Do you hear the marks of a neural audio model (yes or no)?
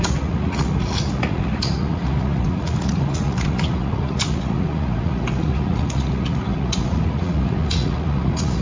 yes